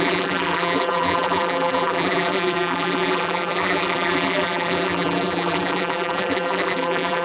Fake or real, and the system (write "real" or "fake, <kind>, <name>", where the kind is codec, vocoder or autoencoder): fake, vocoder, BigVGAN v2